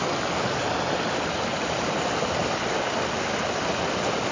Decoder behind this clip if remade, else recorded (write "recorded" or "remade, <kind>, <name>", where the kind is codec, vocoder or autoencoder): recorded